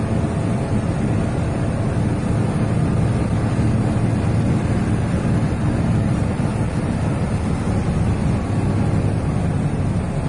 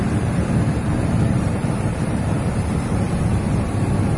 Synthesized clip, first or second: second